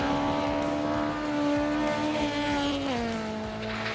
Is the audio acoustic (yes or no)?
yes